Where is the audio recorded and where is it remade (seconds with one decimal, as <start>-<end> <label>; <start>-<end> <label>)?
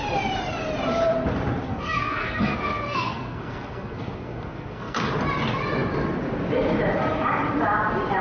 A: 0.0-1.7 recorded; 1.7-5.1 remade; 5.1-8.2 recorded